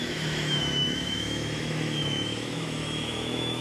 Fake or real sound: fake